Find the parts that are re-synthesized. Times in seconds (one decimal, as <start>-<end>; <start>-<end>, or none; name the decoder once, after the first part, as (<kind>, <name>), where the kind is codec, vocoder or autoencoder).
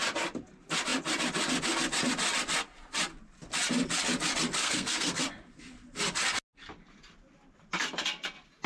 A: 4.6-5.2 (codec, SNAC)